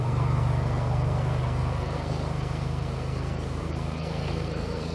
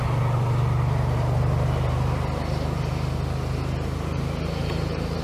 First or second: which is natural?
second